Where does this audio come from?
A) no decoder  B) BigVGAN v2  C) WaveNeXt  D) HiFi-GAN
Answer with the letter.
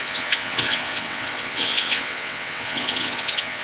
C